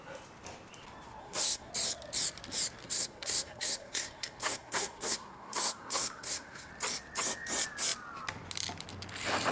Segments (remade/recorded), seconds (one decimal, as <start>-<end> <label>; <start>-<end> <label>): 0.0-1.2 recorded; 1.2-1.7 remade; 1.7-2.8 recorded; 2.8-6.7 remade; 6.7-9.5 recorded